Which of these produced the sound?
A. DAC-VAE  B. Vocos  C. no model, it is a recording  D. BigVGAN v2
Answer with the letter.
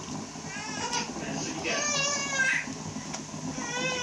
C